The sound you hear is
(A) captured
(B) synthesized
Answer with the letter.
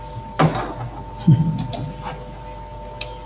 A